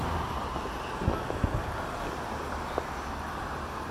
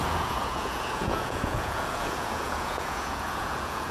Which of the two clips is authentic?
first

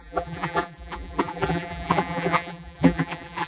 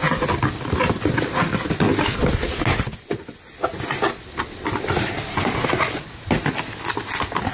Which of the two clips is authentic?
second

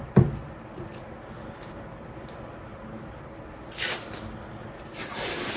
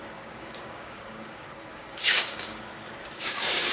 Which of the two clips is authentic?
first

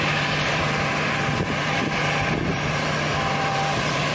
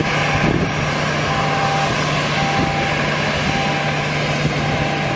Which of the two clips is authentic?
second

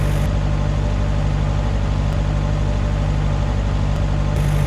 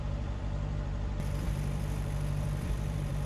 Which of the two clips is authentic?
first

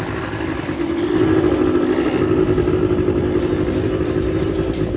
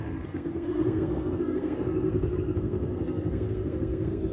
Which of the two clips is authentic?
first